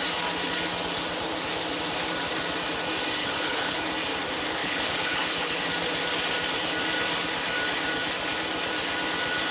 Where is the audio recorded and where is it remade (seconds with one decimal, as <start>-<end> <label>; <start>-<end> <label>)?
0.0-3.2 recorded; 3.2-3.8 remade; 3.8-4.6 recorded; 4.6-5.6 remade; 5.6-9.5 recorded